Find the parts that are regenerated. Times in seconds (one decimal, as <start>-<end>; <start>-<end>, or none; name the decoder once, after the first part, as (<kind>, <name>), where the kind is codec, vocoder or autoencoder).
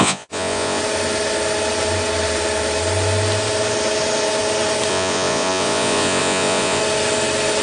0.0-0.8 (vocoder, Vocos); 4.9-6.8